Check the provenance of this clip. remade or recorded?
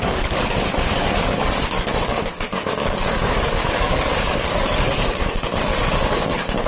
remade